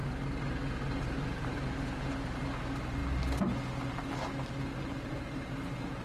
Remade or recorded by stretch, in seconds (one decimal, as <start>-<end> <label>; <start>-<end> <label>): 0.0-1.0 recorded; 1.0-3.0 remade; 3.0-5.1 recorded; 5.1-6.0 remade

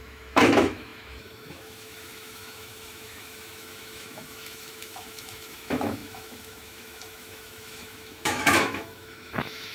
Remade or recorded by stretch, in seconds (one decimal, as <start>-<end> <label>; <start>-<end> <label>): 0.0-9.7 remade

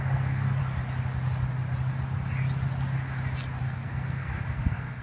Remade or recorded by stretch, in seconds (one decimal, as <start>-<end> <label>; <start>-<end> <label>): 0.0-0.6 remade; 0.6-3.6 recorded; 3.6-5.0 remade

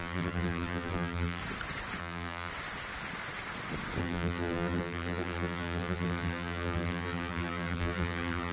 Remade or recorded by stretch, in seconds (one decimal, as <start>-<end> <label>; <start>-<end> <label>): 0.0-1.4 remade; 1.4-2.0 recorded; 2.0-2.5 remade; 2.5-4.0 recorded; 4.0-8.5 remade

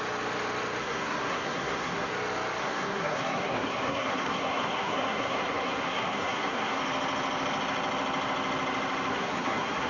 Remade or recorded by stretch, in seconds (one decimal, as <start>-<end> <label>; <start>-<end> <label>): 0.0-0.8 recorded; 0.8-2.1 remade; 2.1-2.6 recorded; 2.6-6.8 remade; 6.8-9.1 recorded; 9.1-9.9 remade

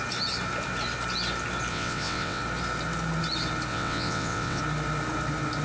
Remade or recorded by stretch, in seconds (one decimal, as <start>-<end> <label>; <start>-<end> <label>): 0.0-1.7 recorded; 1.7-2.4 remade; 2.4-3.7 recorded; 3.7-4.6 remade; 4.6-5.6 recorded

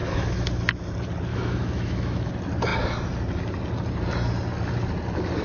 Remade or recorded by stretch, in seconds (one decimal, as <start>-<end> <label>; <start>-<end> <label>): 0.0-0.6 remade; 0.6-1.3 recorded; 1.3-2.3 remade; 2.3-5.4 recorded